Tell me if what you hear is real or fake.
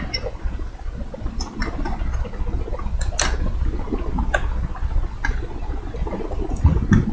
real